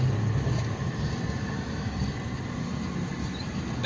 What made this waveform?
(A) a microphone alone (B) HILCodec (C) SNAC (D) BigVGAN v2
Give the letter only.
A